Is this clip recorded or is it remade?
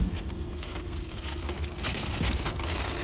remade